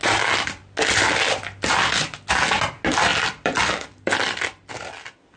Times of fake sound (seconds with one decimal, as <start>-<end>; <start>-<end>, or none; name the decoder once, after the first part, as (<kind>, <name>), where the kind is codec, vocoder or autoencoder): 3.1-4.7 (vocoder, BigVGAN v2)